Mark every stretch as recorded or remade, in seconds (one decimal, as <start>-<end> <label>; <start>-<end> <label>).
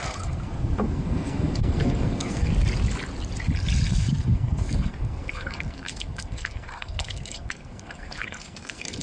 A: 0.0-2.5 remade; 2.5-3.9 recorded; 3.9-9.0 remade